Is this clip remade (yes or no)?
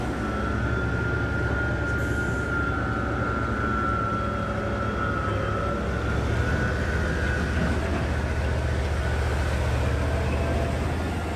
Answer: no